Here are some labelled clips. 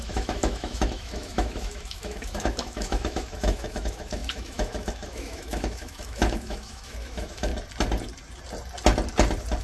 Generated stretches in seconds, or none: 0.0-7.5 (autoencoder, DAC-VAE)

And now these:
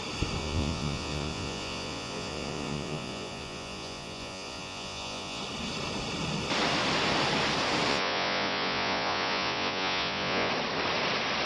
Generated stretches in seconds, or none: 0.4-5.4 (vocoder, Vocos); 7.9-10.5

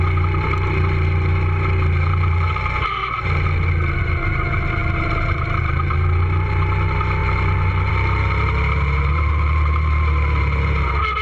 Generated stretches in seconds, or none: 0.0-3.0 (vocoder, BigVGAN v2); 4.0-11.2

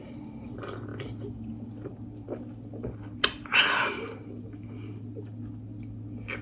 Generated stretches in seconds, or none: none

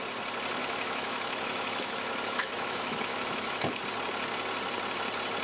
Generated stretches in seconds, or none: 0.6-3.8 (autoencoder, DAC-VAE)

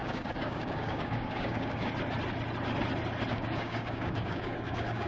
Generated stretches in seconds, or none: 0.0-1.9 (codec, DAC); 3.3-5.1

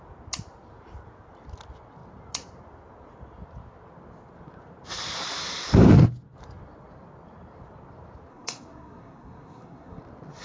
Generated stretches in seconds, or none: 8.3-10.0 (codec, SNAC)

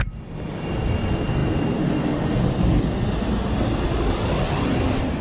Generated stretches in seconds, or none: none